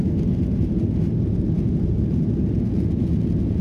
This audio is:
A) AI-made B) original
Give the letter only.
B